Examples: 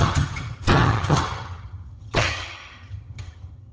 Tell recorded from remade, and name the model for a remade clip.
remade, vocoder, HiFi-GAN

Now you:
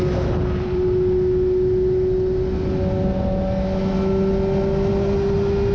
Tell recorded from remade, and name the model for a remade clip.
recorded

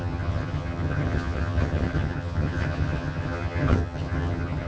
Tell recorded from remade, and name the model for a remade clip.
remade, vocoder, HiFi-GAN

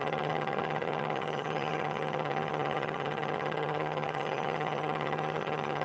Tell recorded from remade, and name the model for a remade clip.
remade, vocoder, HiFi-GAN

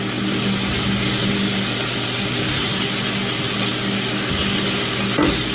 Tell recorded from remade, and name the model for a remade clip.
recorded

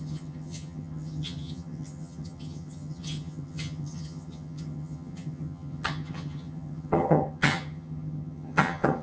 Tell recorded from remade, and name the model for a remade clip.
remade, vocoder, HiFi-GAN